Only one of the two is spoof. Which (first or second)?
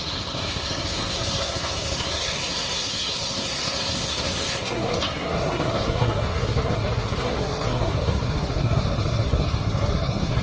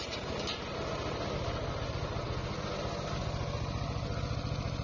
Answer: first